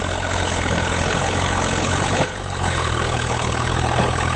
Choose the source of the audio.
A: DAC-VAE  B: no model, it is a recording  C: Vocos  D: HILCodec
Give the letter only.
D